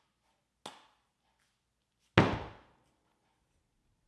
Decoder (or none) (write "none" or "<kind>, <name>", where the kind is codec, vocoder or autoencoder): none